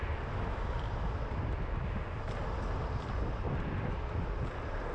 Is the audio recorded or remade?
recorded